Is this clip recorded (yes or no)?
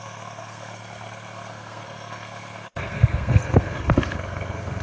no